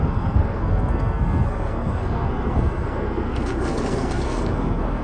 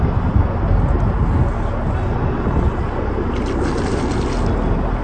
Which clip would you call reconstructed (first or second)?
first